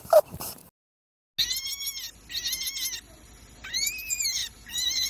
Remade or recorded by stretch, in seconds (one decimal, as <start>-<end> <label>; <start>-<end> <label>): 0.0-0.6 remade; 0.6-3.7 recorded; 3.7-5.1 remade